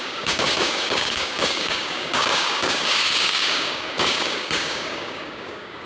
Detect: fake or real fake